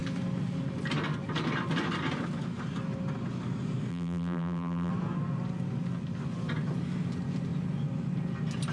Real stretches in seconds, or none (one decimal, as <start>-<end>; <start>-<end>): 0.0-3.9; 4.9-8.7